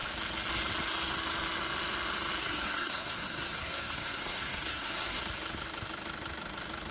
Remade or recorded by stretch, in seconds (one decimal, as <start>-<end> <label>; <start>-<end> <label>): 0.0-2.4 recorded; 2.4-5.2 remade; 5.2-6.9 recorded